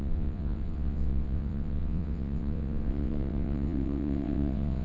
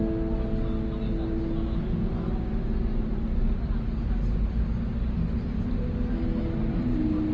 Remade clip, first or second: first